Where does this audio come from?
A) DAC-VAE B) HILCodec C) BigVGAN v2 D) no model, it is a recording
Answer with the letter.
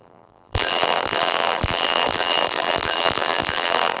C